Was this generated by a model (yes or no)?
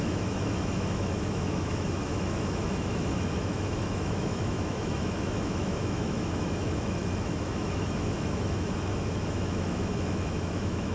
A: yes